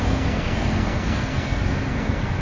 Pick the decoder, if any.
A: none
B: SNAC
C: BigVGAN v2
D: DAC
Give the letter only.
B